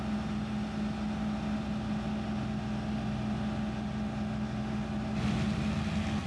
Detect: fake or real real